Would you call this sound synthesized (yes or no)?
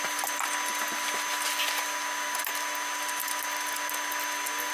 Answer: no